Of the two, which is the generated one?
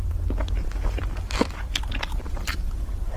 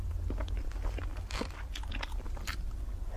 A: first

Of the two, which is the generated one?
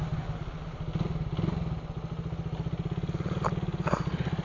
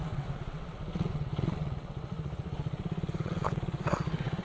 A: second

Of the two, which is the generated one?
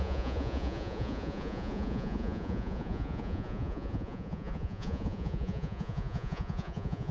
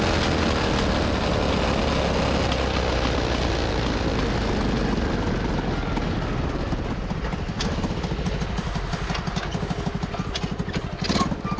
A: first